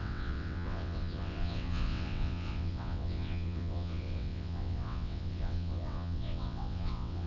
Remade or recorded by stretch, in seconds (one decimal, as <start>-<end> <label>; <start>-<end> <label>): 0.0-7.3 remade